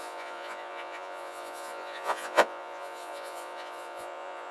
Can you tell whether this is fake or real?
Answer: fake